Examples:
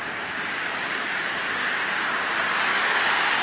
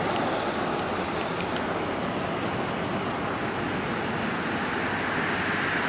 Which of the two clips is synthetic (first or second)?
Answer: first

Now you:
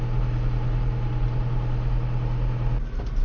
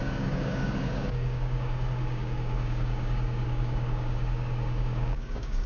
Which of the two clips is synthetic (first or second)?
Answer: second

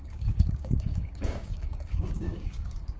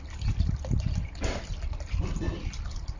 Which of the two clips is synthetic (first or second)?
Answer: first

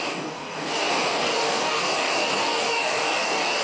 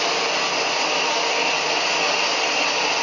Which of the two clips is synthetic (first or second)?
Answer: first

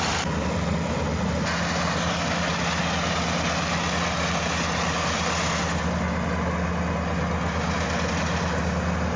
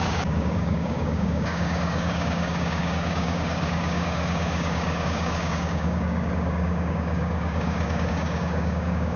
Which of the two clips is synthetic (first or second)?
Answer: second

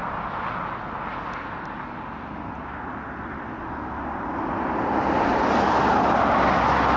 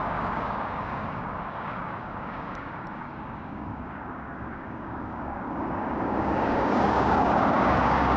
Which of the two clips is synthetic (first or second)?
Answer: second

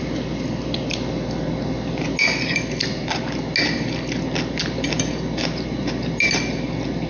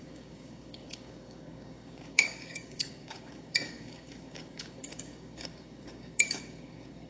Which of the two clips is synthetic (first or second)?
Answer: second